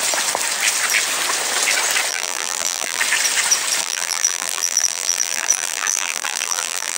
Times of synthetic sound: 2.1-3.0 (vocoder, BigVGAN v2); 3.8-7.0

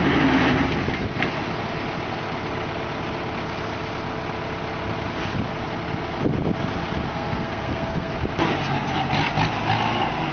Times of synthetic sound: 7.1-8.1 (codec, SNAC)